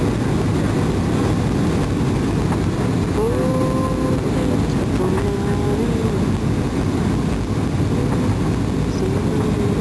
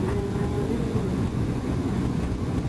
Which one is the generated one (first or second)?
second